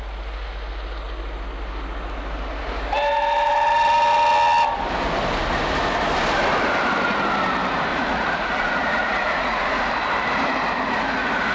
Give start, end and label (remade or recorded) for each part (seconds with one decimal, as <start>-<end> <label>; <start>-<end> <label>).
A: 0.0-7.9 recorded; 7.9-9.9 remade; 9.9-11.5 recorded